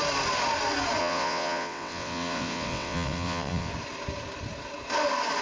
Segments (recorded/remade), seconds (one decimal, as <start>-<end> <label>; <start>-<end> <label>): 0.0-1.0 recorded; 1.0-3.7 remade; 3.7-5.4 recorded